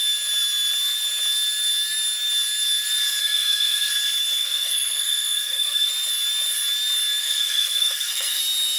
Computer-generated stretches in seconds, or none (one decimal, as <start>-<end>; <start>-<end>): 3.2-3.9; 4.4-5.9; 7.2-8.4